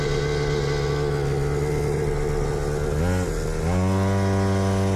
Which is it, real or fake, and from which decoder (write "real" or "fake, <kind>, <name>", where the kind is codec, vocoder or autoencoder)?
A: real